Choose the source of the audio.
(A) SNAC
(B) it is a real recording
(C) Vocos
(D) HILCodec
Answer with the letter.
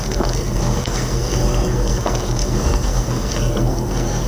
A